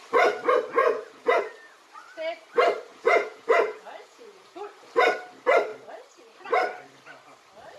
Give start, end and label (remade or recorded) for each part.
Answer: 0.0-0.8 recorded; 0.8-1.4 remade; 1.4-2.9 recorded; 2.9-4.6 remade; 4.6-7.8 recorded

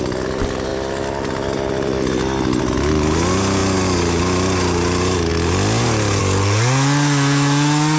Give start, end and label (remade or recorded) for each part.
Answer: 0.0-8.0 recorded

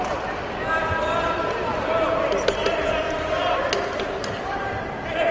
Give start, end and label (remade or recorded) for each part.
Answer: 0.0-3.4 recorded; 3.4-4.7 remade; 4.7-5.3 recorded

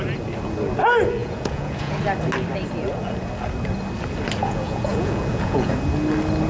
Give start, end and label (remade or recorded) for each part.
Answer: 0.0-1.2 recorded; 1.2-2.0 remade; 2.0-4.4 recorded; 4.4-5.7 remade; 5.7-6.5 recorded

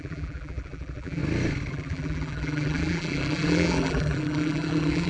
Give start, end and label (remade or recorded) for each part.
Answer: 0.0-1.2 remade; 1.2-1.7 recorded; 1.7-5.1 remade

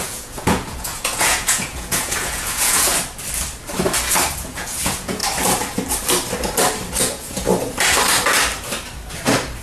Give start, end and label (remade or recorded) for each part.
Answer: 0.0-2.9 remade; 2.9-4.4 recorded; 4.4-5.2 remade; 5.2-7.0 recorded; 7.0-7.5 remade; 7.5-9.6 recorded

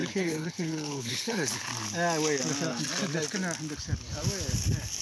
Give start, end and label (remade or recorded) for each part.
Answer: 0.0-1.7 remade; 1.7-5.0 recorded